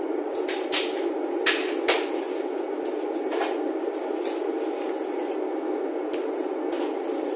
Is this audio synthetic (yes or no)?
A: no